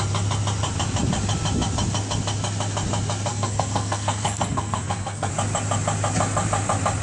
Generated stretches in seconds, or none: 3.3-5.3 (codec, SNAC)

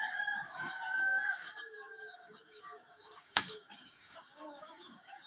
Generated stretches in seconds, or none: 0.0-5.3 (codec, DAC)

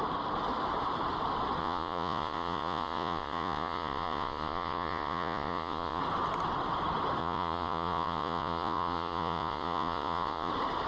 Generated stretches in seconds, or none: 1.6-6.0 (vocoder, Vocos); 7.2-10.5

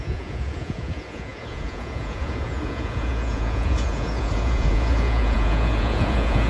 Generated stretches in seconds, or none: 0.0-6.5 (vocoder, Vocos)

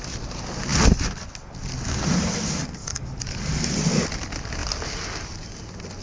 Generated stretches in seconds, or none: 2.8-3.4 (codec, DAC)